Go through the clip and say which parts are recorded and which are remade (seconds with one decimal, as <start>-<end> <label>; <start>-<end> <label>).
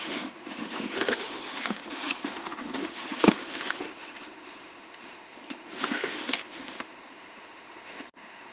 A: 0.0-8.5 remade